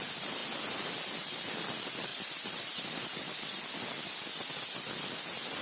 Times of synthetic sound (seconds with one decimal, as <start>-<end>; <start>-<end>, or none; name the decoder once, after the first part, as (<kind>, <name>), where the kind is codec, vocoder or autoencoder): none